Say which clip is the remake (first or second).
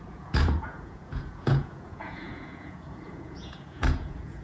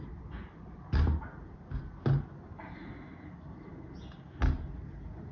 first